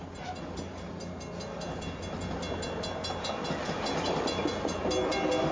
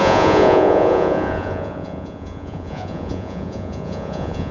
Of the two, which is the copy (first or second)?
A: second